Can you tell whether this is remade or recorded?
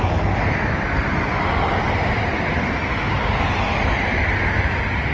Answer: recorded